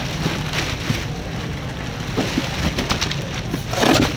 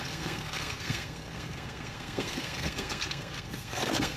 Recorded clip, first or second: first